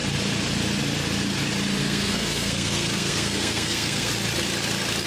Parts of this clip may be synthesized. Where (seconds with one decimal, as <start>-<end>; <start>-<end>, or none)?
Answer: 1.8-4.1